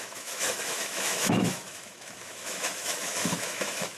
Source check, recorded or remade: remade